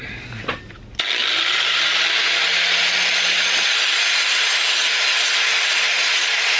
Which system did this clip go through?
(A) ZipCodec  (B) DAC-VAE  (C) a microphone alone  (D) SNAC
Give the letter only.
C